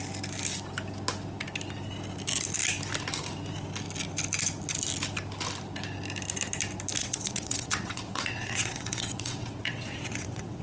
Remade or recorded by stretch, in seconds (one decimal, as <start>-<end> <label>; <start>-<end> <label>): 0.0-7.0 recorded; 7.0-10.6 remade